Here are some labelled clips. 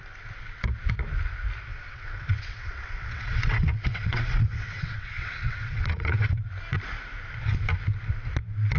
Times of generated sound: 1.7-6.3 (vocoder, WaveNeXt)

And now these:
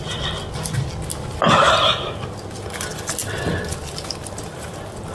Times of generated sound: none